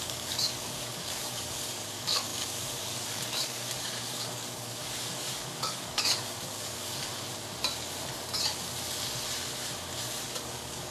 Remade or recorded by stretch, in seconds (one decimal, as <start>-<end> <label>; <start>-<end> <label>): 0.0-7.1 remade; 7.1-10.2 recorded; 10.2-10.9 remade